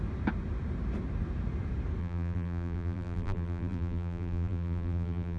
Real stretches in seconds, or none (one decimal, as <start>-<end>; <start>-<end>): 0.0-2.0